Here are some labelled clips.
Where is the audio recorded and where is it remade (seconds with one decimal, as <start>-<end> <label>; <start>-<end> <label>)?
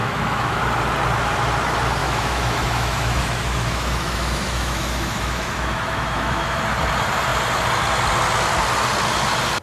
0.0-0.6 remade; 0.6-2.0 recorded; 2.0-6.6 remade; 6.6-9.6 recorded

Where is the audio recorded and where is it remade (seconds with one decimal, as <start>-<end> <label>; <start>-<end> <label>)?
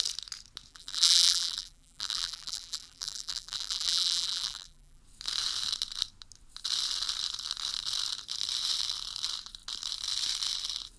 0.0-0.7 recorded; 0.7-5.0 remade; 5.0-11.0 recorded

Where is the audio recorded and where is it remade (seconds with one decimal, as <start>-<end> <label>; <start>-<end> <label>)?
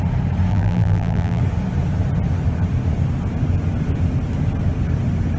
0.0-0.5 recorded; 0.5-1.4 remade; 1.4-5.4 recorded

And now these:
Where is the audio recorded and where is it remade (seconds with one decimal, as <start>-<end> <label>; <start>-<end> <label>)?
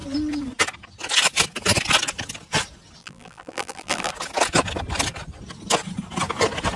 0.0-3.0 recorded; 3.0-4.1 remade; 4.1-6.8 recorded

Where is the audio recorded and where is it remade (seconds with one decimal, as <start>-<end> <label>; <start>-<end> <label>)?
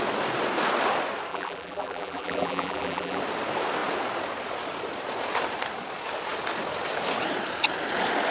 0.0-1.3 recorded; 1.3-3.2 remade; 3.2-8.3 recorded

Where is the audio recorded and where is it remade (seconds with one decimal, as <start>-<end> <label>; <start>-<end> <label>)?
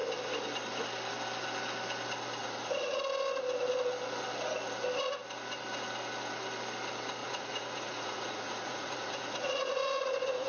0.0-2.4 recorded; 2.4-3.0 remade; 3.0-7.2 recorded; 7.2-10.5 remade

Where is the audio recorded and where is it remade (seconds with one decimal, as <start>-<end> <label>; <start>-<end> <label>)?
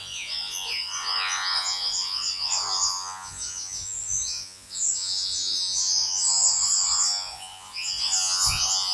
0.0-8.9 remade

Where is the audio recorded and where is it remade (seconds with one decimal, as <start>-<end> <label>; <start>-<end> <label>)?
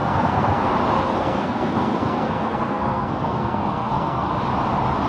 0.0-0.7 remade; 0.7-1.2 recorded; 1.2-4.3 remade; 4.3-5.1 recorded